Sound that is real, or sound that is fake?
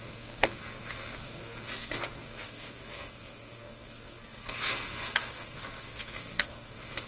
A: fake